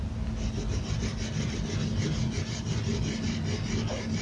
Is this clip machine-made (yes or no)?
no